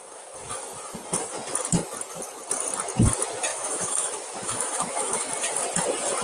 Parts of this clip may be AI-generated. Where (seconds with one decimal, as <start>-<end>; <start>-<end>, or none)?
3.5-5.3